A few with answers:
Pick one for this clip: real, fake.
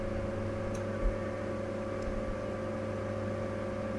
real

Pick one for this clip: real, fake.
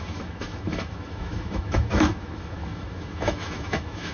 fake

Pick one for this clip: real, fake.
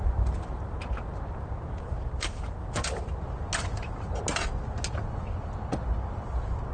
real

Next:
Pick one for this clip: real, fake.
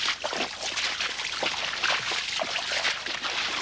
real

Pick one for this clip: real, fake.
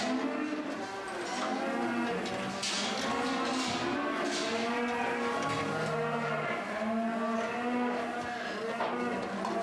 real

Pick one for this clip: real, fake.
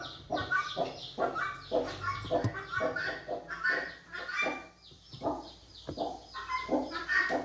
real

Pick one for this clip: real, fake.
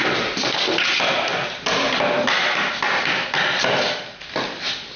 real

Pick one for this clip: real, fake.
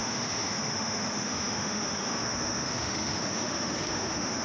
fake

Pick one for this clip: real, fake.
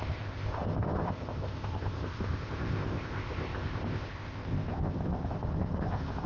fake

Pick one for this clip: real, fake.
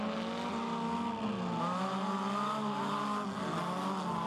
real